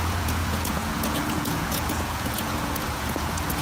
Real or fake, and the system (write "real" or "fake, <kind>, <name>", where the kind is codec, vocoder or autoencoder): fake, vocoder, Vocos